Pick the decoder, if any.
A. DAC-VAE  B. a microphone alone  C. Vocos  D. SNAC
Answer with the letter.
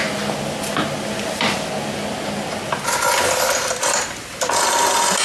B